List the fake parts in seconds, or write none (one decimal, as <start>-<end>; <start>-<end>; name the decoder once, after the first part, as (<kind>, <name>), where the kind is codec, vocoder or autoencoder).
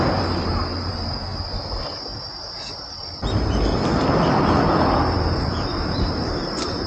0.0-1.3 (vocoder, BigVGAN v2); 5.4-6.9